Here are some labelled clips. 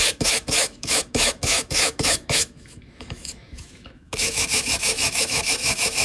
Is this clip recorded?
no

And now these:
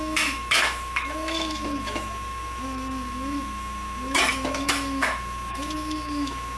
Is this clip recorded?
no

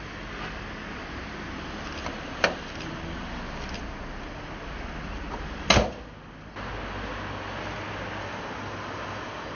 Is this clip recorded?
yes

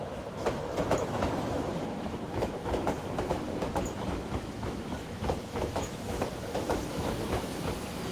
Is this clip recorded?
no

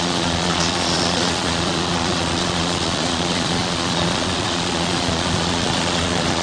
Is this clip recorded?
no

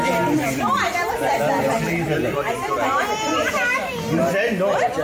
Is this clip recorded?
yes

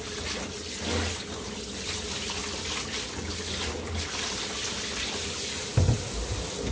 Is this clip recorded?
yes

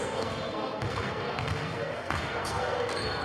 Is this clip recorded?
no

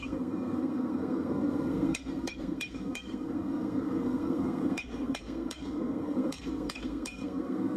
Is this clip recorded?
no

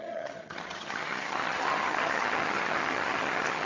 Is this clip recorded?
no